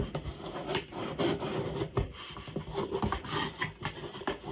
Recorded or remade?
recorded